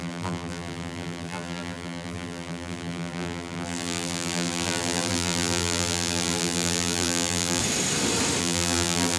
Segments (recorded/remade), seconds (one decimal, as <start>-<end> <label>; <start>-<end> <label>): 0.0-7.6 remade; 7.6-8.4 recorded; 8.4-9.2 remade